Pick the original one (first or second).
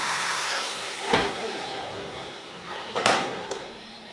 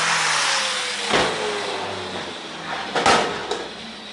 second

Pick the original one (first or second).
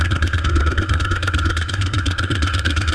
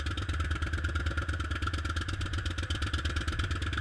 second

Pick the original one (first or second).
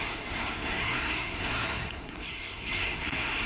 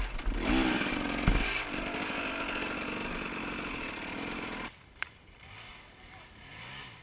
second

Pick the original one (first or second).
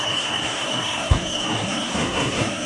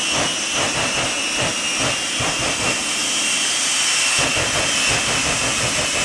second